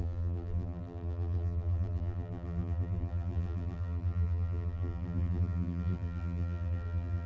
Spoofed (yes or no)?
yes